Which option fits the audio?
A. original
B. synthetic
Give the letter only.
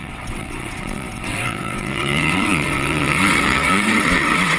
B